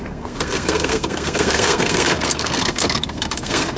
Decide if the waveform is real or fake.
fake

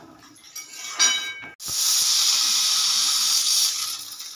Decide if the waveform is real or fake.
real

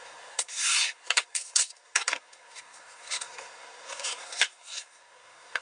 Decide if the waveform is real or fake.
fake